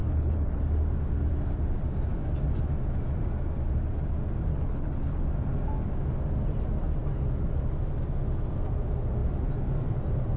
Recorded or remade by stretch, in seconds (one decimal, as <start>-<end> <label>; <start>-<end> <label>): 0.0-0.6 remade; 0.6-4.5 recorded; 4.5-5.2 remade; 5.2-10.4 recorded